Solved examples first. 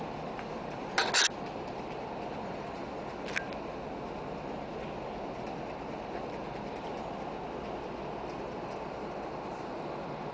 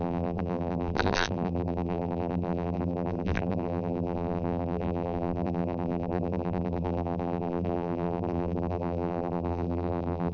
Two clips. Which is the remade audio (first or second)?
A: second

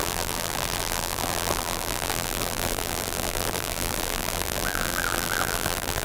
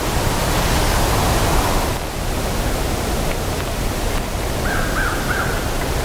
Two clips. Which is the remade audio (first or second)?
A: first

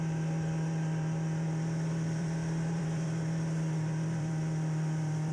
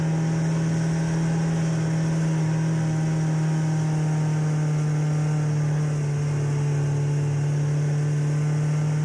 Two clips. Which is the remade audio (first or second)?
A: first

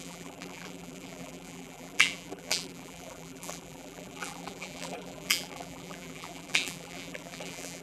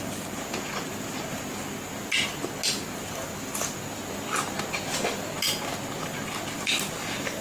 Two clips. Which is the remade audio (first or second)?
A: first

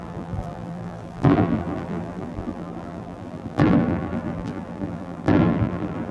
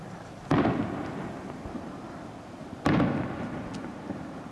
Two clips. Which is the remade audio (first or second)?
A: first